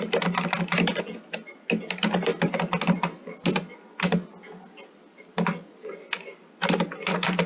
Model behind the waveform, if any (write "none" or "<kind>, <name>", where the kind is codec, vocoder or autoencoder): none